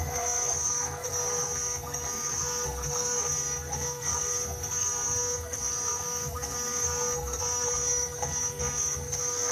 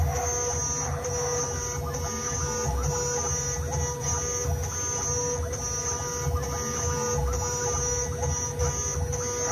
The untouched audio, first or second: second